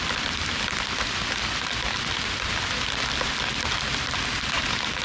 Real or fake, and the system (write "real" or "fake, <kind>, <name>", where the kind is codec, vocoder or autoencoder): real